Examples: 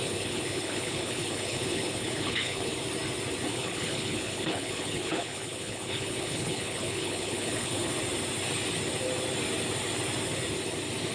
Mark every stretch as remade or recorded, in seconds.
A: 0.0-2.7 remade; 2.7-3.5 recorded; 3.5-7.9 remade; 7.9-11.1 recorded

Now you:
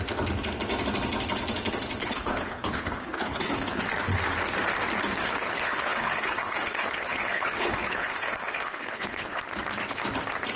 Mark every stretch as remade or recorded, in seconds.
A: 0.0-2.0 recorded; 2.0-3.8 remade; 3.8-5.2 recorded; 5.2-9.4 remade; 9.4-10.6 recorded